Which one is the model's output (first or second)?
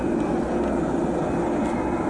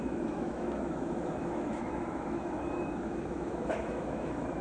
second